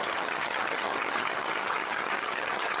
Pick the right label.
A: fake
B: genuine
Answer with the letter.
A